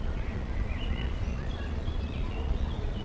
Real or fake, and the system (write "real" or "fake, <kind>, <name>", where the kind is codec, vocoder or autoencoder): fake, vocoder, Vocos